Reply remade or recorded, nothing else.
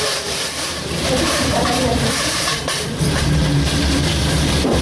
remade